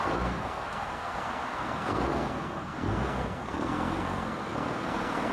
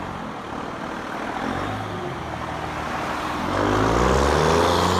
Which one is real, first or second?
second